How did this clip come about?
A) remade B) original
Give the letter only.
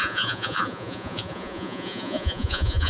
A